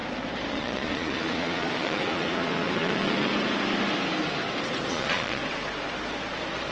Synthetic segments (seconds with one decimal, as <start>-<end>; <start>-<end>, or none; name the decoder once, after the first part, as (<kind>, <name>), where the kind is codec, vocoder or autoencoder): 0.5-3.3 (vocoder, Vocos); 4.9-5.4